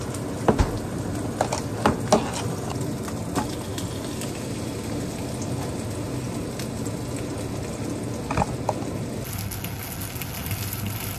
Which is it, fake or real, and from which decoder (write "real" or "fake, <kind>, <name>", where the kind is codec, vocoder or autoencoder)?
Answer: real